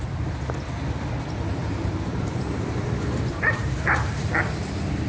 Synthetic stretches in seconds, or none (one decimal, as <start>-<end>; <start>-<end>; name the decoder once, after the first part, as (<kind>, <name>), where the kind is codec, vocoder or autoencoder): 1.6-4.3 (vocoder, BigVGAN v2)